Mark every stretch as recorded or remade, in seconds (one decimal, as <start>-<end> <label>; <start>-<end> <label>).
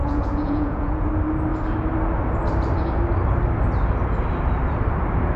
0.0-1.1 remade; 1.1-5.4 recorded